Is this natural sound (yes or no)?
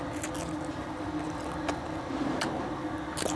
yes